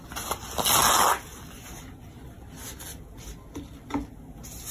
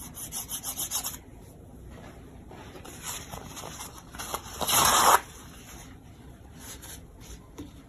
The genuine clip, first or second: first